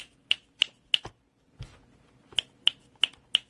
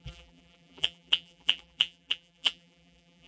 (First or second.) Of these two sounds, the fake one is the second